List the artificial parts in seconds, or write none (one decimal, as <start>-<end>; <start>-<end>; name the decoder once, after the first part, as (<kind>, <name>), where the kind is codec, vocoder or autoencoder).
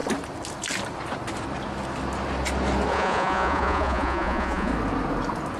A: 2.9-4.7 (vocoder, Vocos)